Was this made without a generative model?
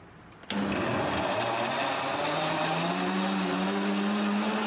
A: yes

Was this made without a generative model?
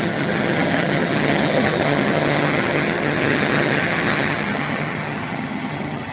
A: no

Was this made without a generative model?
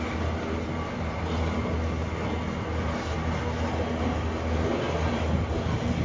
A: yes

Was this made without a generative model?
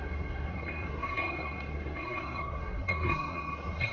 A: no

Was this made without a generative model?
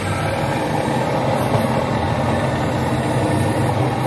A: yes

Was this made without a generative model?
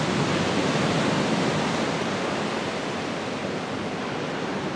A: yes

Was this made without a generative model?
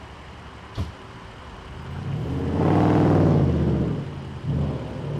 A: yes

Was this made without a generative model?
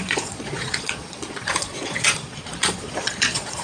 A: no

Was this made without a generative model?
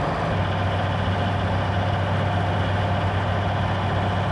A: yes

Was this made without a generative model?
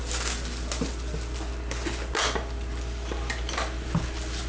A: yes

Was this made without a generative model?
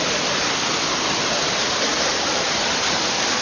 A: yes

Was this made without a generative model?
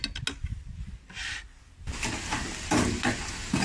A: yes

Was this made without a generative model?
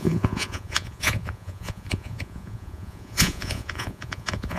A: no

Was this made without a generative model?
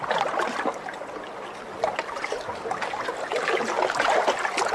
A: yes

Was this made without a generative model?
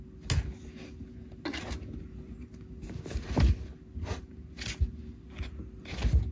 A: yes